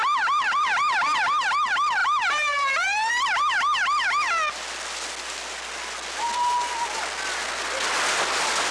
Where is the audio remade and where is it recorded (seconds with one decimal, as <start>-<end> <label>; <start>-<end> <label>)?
0.0-2.0 recorded; 2.0-3.1 remade; 3.1-8.7 recorded